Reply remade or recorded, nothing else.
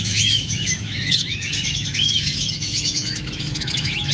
remade